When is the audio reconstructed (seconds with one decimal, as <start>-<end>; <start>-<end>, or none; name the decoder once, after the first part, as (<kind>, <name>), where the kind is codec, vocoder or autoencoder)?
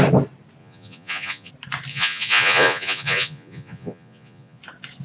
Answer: 0.6-1.5 (vocoder, Vocos); 1.9-4.6